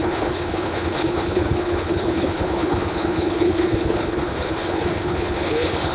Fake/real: fake